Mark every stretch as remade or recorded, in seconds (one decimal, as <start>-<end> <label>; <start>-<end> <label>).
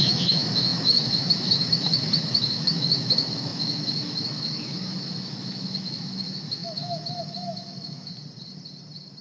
0.0-8.1 remade; 8.1-9.2 recorded